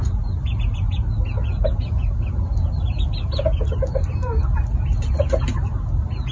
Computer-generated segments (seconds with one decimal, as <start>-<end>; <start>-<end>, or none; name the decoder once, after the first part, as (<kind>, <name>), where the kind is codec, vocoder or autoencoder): none